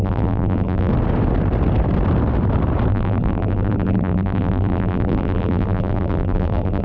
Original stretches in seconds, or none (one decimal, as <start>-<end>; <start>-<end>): 0.9-2.9